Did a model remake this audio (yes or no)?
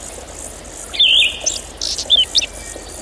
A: no